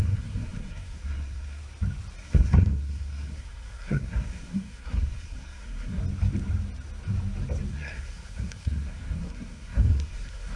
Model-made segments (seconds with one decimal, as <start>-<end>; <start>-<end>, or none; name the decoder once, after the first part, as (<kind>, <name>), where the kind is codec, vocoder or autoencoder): 0.0-1.6 (codec, SNAC); 2.2-6.0; 7.7-10.6